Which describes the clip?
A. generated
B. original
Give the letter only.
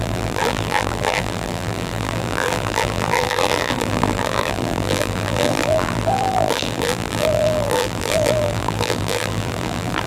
A